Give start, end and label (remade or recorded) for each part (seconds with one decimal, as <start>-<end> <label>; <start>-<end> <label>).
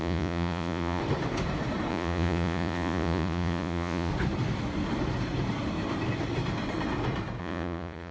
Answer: 0.0-1.0 remade; 1.0-1.9 recorded; 1.9-4.1 remade; 4.1-7.4 recorded; 7.4-8.1 remade